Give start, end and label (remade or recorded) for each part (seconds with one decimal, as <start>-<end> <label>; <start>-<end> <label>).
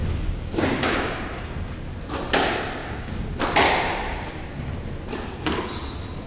0.0-1.7 remade; 1.7-2.8 recorded; 2.8-3.4 remade; 3.4-6.3 recorded